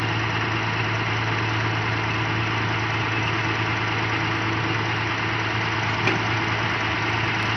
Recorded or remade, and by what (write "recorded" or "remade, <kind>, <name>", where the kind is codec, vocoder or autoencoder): recorded